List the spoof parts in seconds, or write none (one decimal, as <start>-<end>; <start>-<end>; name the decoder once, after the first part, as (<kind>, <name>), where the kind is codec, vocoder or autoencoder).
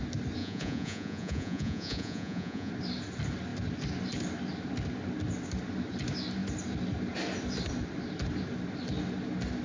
0.4-2.7 (vocoder, Vocos)